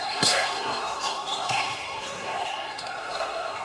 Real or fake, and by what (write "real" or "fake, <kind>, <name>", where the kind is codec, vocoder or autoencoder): fake, codec, SNAC